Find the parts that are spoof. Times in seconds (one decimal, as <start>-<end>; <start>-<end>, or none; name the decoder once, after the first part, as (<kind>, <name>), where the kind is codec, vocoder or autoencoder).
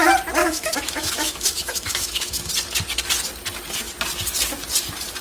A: 0.4-2.5 (autoencoder, DAC-VAE)